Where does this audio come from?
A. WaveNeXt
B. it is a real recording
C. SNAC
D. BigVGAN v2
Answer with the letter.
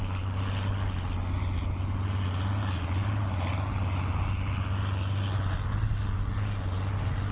B